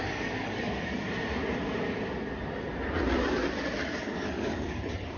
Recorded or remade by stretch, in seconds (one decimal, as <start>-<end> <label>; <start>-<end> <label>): 0.0-0.9 remade; 0.9-4.0 recorded; 4.0-5.2 remade